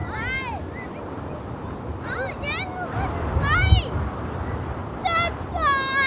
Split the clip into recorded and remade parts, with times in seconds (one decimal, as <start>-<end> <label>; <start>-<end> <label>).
0.0-6.1 recorded